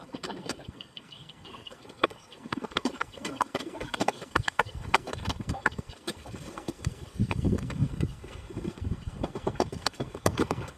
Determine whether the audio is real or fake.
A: fake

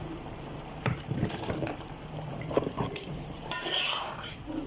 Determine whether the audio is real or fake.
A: fake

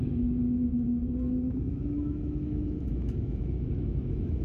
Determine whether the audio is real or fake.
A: fake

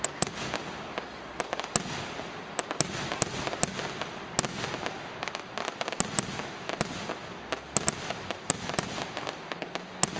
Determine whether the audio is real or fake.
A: real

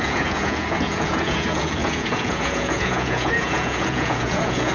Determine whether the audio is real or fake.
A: fake